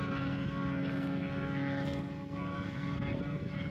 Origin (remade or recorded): remade